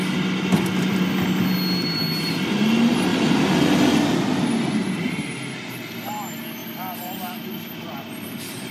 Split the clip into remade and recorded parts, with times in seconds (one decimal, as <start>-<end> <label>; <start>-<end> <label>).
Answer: 0.0-4.8 recorded; 4.8-5.8 remade; 5.8-6.6 recorded; 6.6-7.5 remade; 7.5-8.7 recorded